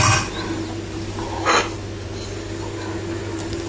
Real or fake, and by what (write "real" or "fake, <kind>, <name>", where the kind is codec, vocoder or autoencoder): real